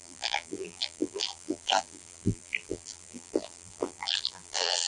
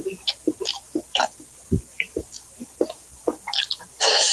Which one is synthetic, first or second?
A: first